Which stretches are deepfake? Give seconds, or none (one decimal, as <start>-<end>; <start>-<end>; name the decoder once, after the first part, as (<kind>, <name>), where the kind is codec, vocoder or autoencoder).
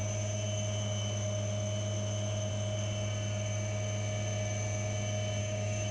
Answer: 5.4-5.9 (codec, DAC)